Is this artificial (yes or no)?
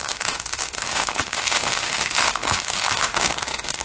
yes